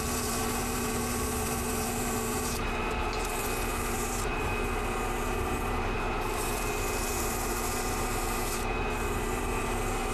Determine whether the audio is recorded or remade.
remade